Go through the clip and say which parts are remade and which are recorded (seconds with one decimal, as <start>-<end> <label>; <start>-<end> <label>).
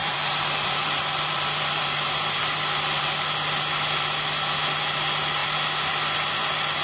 0.0-2.4 remade; 2.4-6.8 recorded